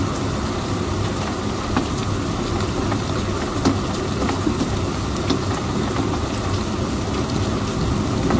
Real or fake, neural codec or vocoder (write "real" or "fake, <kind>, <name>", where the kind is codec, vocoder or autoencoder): real